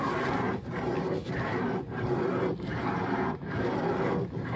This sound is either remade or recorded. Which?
recorded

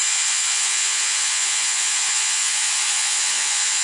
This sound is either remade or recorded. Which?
remade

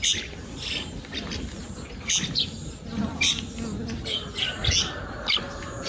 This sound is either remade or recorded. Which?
recorded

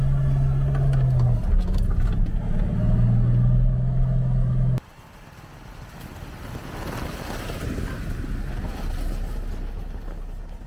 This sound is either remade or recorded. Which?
recorded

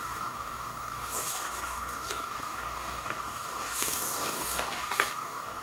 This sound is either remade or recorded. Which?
remade